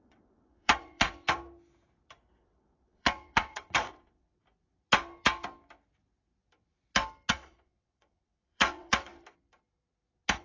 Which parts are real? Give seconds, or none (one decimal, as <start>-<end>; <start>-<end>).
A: 1.1-2.4; 4.4-7.3; 9.1-10.4